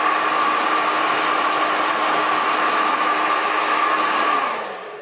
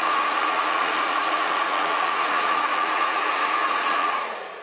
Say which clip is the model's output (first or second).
second